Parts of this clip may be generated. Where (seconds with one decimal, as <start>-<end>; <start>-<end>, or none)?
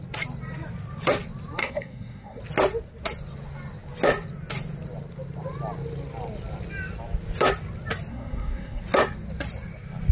1.6-2.4; 8.1-8.8